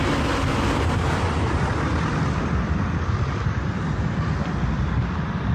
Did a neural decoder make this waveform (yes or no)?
no